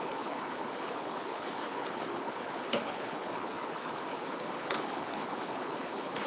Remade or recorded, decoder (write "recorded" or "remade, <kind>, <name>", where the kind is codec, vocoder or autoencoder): remade, codec, HILCodec